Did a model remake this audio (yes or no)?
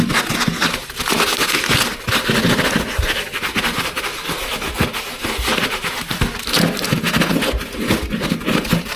no